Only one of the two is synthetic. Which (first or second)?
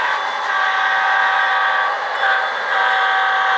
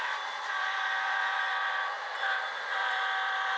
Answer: second